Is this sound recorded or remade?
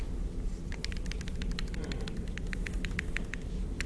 recorded